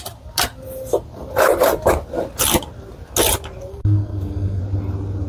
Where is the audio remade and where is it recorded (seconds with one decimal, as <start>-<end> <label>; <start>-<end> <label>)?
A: 0.0-3.7 recorded; 3.7-4.6 remade; 4.6-5.3 recorded